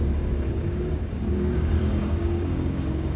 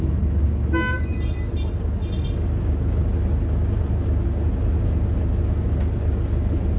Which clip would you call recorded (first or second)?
second